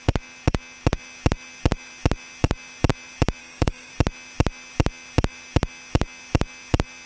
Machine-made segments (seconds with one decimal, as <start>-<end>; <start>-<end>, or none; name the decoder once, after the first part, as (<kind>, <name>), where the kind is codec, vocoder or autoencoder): 3.4-3.9 (codec, DAC)